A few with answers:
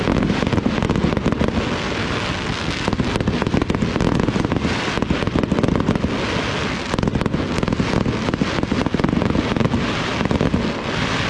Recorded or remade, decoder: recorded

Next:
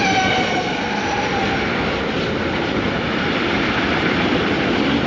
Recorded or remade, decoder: recorded